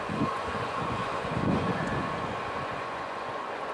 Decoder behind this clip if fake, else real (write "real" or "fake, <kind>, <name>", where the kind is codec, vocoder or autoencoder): fake, vocoder, Vocos